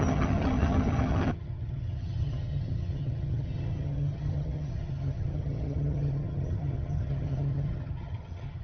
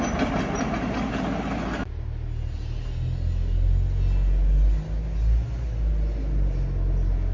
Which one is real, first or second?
second